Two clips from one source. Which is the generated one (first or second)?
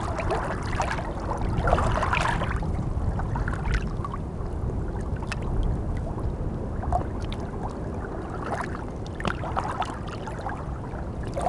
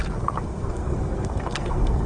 second